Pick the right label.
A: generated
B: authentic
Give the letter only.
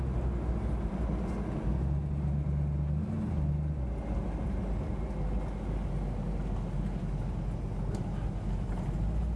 B